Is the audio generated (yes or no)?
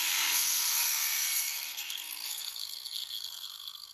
yes